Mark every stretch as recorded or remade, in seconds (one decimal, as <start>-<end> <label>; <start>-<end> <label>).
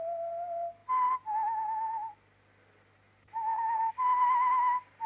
0.0-5.1 recorded